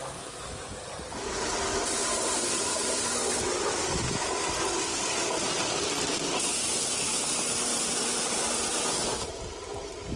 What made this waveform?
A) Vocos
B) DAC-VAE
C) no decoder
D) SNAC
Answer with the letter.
C